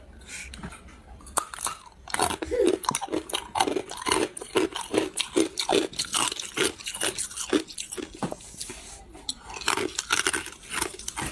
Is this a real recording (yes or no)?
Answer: yes